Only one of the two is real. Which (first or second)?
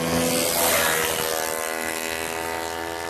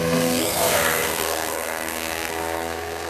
first